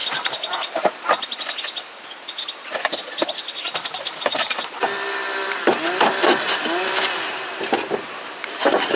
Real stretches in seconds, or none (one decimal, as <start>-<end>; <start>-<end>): 0.0-9.0